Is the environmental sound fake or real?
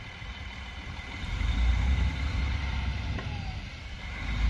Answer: fake